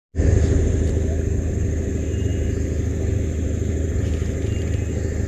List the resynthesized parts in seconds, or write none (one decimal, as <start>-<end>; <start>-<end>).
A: none